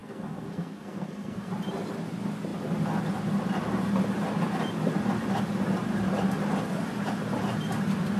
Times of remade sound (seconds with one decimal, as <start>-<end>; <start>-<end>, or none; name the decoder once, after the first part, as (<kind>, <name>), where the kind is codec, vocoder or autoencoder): 0.0-1.5 (codec, SNAC)